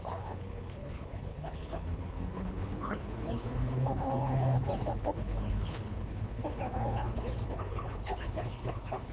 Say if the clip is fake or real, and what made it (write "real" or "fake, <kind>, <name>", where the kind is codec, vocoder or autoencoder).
fake, codec, HILCodec